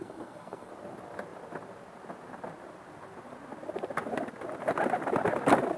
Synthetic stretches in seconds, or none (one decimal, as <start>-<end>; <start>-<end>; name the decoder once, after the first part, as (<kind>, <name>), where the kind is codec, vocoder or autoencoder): 0.0-0.7 (codec, SNAC)